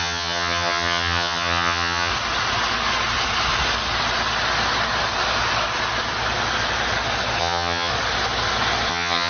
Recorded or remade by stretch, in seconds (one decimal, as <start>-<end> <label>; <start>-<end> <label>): 0.0-2.1 remade; 2.1-7.4 recorded; 7.4-7.9 remade; 7.9-8.9 recorded; 8.9-9.3 remade